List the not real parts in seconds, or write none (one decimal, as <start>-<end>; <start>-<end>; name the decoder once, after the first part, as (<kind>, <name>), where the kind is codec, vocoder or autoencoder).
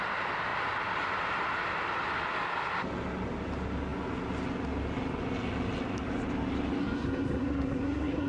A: 6.8-8.3 (codec, SNAC)